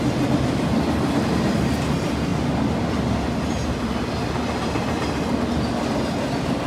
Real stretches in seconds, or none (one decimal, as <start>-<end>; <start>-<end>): 0.0-6.7